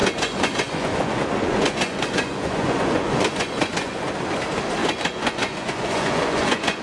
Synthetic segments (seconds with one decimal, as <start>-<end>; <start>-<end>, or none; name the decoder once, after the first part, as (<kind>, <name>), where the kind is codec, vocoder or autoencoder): 0.0-4.1 (vocoder, Vocos); 4.8-6.8